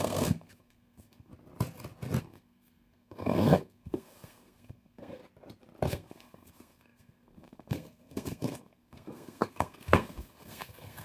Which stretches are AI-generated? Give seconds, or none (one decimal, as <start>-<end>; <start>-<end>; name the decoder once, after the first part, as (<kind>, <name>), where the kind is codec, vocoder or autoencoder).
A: 0.0-1.3 (codec, SNAC); 2.2-5.2; 5.9-11.0